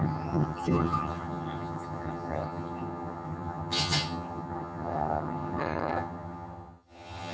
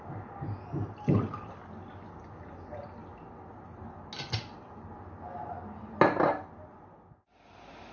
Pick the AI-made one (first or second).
first